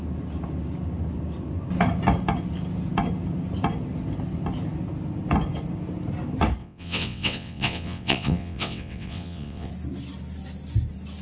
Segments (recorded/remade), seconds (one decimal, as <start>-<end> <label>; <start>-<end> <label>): 0.0-6.6 recorded; 6.6-9.7 remade; 9.7-11.2 recorded